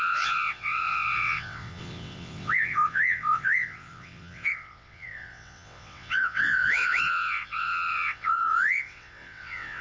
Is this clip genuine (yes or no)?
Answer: no